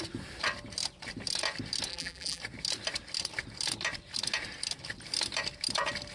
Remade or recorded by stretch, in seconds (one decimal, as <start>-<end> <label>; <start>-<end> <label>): 0.0-1.9 recorded; 1.9-2.4 remade; 2.4-6.1 recorded